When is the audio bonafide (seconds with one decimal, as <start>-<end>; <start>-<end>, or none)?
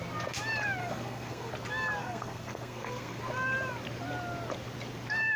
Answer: 0.0-0.8; 1.5-2.0; 3.2-5.4